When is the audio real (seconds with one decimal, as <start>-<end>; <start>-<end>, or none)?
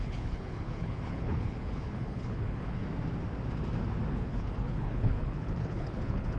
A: 2.8-4.1